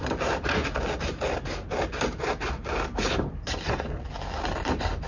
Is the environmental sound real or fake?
real